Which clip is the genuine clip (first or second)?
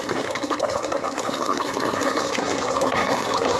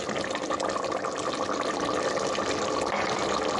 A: second